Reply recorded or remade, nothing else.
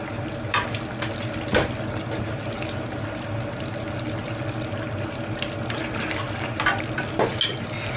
recorded